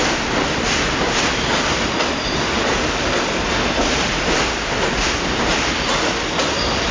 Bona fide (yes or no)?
yes